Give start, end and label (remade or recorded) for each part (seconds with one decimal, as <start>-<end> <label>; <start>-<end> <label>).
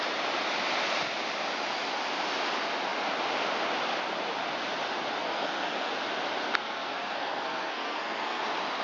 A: 0.0-5.2 recorded; 5.2-5.9 remade; 5.9-6.6 recorded; 6.6-8.4 remade; 8.4-8.8 recorded